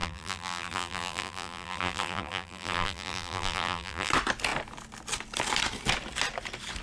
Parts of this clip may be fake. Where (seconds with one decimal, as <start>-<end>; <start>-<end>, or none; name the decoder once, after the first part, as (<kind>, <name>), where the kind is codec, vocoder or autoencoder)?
0.0-4.1 (vocoder, BigVGAN v2)